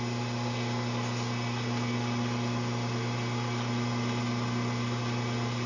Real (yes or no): yes